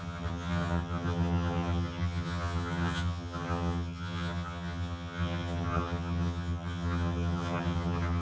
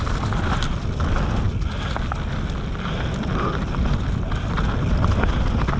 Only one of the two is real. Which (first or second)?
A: second